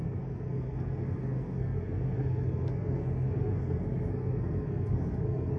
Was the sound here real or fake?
fake